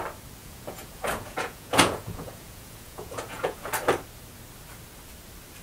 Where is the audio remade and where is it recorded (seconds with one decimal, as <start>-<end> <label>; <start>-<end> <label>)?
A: 0.0-0.4 recorded; 0.4-3.7 remade; 3.7-5.6 recorded